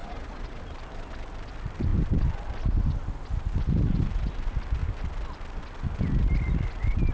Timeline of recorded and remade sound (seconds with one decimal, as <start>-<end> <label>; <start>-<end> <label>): 0.0-0.6 remade; 0.6-7.1 recorded